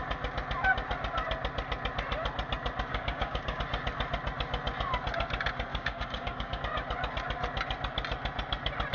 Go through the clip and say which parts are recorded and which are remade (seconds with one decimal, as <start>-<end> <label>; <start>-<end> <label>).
0.0-2.9 recorded; 2.9-3.6 remade; 3.6-5.7 recorded; 5.7-6.6 remade; 6.6-8.9 recorded